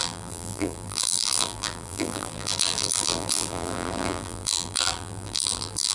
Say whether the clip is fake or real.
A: fake